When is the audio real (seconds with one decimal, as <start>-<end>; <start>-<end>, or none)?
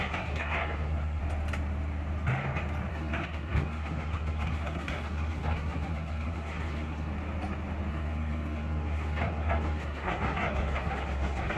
1.2-2.9; 7.1-7.9